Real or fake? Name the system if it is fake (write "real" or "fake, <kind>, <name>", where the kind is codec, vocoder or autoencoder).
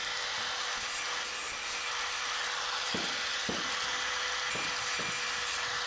real